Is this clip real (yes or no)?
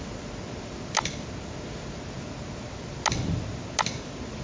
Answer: yes